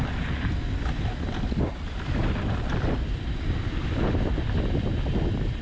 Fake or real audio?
real